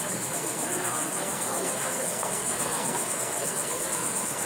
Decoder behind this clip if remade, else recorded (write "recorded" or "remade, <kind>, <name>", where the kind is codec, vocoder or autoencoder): remade, codec, SNAC